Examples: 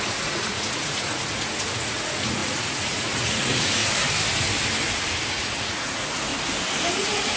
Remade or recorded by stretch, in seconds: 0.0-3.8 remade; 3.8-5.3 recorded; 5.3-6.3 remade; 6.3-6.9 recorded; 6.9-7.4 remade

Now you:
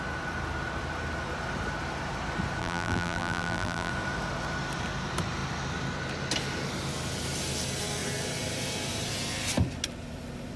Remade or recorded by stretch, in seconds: 0.0-2.6 recorded; 2.6-3.9 remade; 3.9-10.6 recorded